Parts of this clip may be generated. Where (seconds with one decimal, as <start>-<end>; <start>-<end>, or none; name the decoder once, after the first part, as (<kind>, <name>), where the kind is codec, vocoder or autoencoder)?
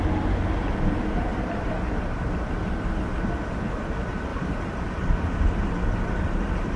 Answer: 4.3-6.8 (vocoder, BigVGAN v2)